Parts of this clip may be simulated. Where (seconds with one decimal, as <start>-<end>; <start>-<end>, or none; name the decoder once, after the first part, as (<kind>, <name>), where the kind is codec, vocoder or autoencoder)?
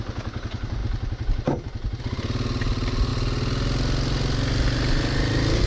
none